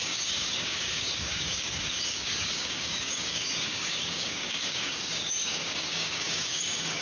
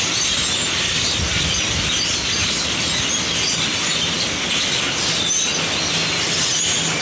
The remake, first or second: first